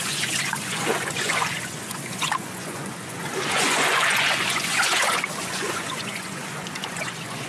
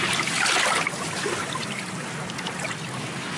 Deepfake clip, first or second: first